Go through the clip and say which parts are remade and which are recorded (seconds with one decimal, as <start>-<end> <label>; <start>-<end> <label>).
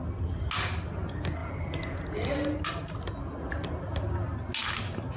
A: 0.0-5.2 recorded